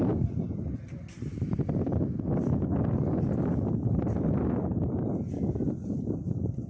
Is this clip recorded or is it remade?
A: recorded